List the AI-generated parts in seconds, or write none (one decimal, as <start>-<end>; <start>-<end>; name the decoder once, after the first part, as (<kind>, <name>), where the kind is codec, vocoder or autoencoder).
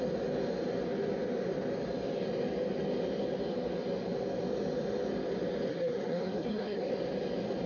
5.7-6.9 (codec, SNAC)